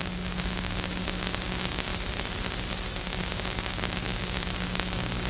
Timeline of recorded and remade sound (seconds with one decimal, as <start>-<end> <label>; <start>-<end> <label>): 0.0-1.9 remade; 1.9-3.0 recorded; 3.0-5.3 remade